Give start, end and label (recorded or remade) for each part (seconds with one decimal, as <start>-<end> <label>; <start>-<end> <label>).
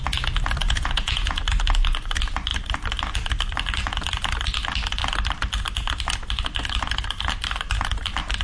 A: 0.0-0.6 recorded; 0.6-1.4 remade; 1.4-8.4 recorded